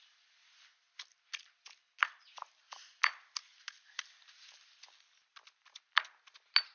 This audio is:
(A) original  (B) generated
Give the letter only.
A